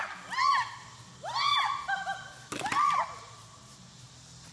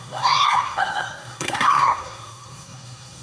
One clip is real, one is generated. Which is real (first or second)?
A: first